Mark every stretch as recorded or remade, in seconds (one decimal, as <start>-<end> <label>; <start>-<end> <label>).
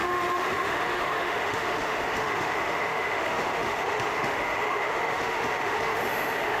0.0-6.6 remade